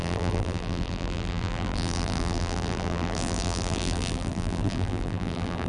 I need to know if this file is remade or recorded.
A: remade